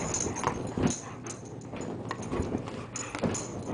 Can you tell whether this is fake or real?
real